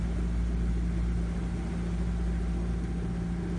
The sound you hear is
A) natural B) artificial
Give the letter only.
A